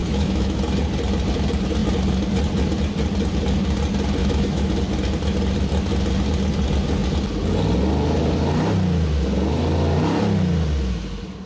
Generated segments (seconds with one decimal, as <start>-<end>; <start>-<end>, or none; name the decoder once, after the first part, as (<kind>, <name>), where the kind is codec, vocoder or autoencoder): 0.0-0.6 (autoencoder, DAC-VAE); 4.2-4.7